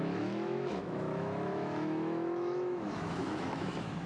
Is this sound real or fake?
fake